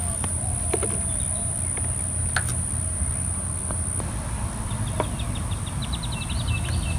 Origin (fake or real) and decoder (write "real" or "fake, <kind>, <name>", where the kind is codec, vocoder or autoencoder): real